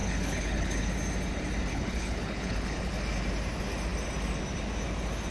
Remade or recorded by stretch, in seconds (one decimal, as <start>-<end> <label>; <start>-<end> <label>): 0.0-0.9 remade; 0.9-1.7 recorded; 1.7-2.9 remade; 2.9-5.3 recorded